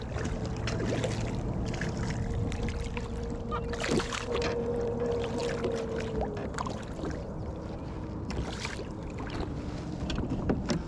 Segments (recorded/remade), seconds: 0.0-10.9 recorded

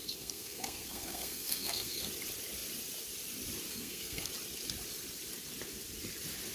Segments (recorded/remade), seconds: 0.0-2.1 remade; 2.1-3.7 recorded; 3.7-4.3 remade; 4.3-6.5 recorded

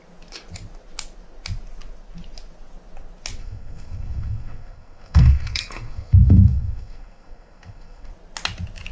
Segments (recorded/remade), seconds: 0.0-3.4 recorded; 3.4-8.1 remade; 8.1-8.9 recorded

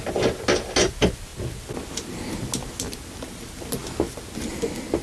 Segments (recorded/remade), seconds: 0.0-5.0 recorded